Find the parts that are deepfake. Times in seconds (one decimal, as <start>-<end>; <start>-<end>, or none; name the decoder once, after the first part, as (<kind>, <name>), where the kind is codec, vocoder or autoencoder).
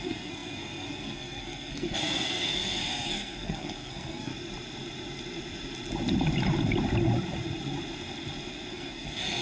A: 0.0-4.3 (codec, SNAC); 8.7-9.4